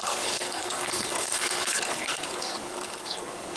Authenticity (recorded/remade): remade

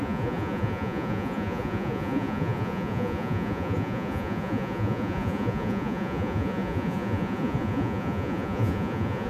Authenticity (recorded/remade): remade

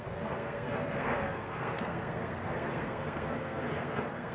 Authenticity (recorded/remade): remade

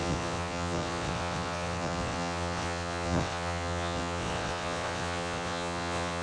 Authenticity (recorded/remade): remade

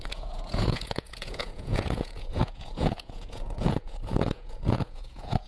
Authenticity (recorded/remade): remade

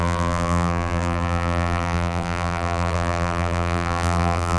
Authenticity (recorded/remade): remade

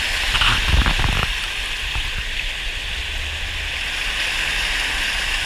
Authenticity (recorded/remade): recorded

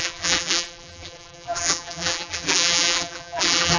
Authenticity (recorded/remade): remade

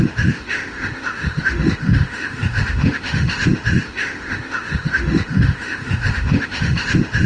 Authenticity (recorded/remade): remade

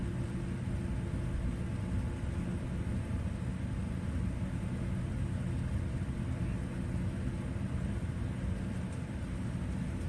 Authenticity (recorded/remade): recorded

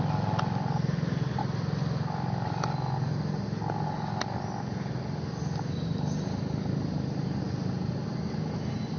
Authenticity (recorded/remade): recorded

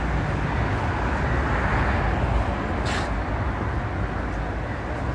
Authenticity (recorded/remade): recorded